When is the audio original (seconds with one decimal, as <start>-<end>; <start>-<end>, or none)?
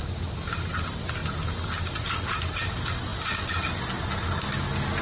0.0-1.2; 2.3-5.0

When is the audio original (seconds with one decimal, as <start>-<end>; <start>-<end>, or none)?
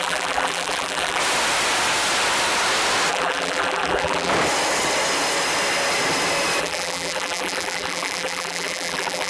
1.2-3.1; 4.3-6.6